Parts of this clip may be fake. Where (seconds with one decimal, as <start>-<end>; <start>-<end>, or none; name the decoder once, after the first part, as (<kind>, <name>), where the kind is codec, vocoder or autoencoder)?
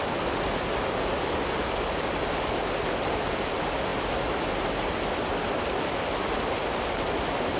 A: none